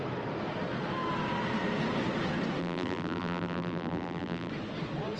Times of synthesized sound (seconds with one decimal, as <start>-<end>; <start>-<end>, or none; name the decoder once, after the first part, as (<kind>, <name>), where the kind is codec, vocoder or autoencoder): 2.6-4.5 (vocoder, BigVGAN v2)